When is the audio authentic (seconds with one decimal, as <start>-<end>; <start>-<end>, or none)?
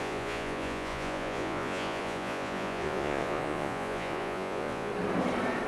4.9-5.7